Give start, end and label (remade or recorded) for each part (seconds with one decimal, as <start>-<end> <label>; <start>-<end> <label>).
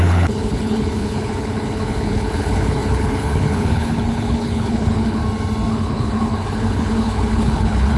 0.0-5.2 remade; 5.2-5.7 recorded; 5.7-8.0 remade